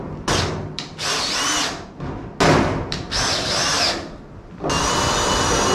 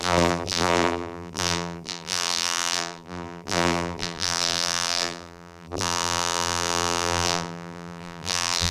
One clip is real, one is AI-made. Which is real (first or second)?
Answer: first